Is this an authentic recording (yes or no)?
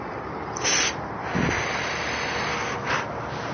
yes